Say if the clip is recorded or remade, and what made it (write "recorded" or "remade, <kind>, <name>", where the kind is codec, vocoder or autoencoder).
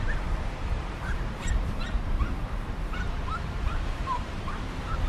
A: remade, vocoder, BigVGAN v2